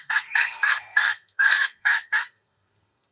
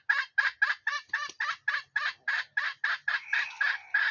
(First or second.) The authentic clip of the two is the second